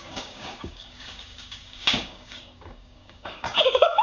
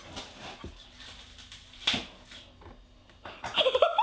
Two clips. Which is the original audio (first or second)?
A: second